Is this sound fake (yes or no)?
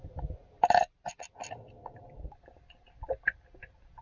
no